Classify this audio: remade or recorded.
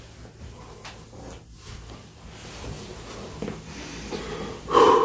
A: recorded